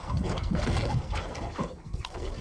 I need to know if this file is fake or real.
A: fake